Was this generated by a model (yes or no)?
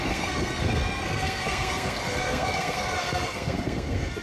yes